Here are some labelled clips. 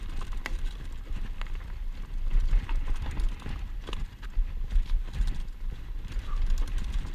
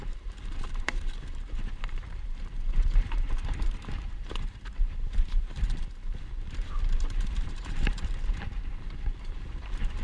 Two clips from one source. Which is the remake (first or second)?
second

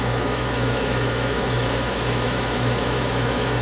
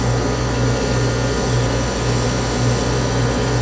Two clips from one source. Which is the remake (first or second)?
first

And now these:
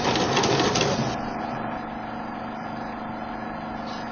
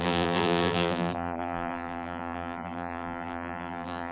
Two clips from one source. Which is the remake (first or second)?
second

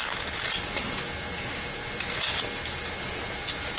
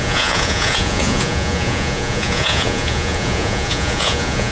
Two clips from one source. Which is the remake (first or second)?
second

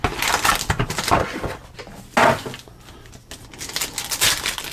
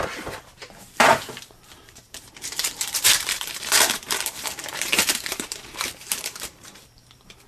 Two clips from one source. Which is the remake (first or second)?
second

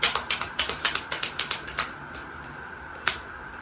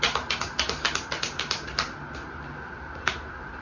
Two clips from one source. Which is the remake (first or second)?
first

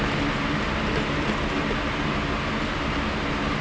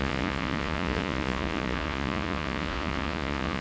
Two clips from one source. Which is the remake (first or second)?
second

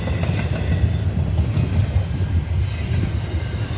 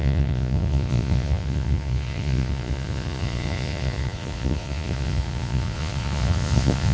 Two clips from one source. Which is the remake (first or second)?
second